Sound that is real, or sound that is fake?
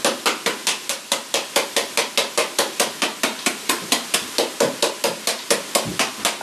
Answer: real